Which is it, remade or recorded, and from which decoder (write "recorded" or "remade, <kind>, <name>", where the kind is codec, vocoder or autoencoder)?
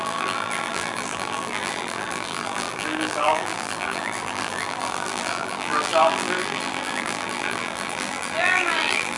remade, vocoder, BigVGAN v2